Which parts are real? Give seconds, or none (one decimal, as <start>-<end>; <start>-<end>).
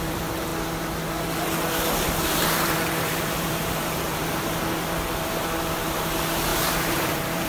0.5-2.2; 4.1-5.7